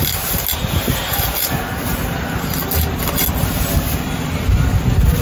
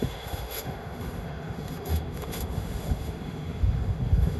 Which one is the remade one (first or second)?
second